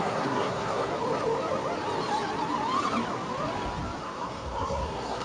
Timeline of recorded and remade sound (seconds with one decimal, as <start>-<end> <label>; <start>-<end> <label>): 0.0-0.9 remade; 0.9-4.0 recorded; 4.0-5.2 remade